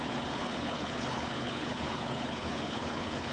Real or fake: fake